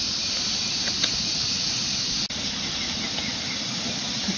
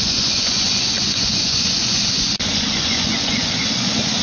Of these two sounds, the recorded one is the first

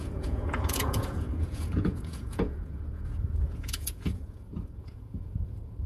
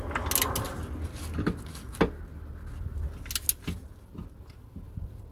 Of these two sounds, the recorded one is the second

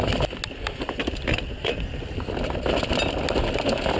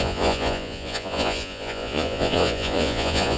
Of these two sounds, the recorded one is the first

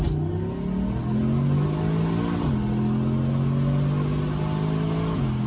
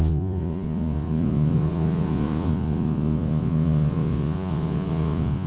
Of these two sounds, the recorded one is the first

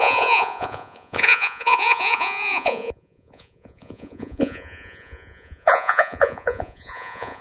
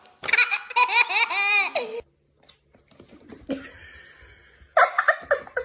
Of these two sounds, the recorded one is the second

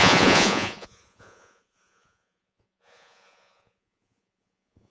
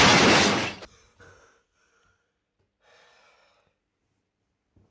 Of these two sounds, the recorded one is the second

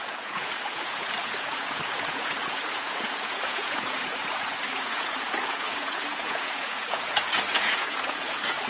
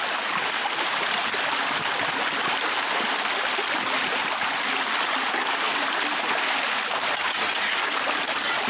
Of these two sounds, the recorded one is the second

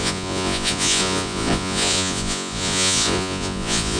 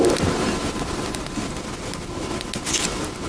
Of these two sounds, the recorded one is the second